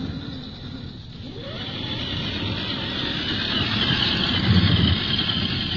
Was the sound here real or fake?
real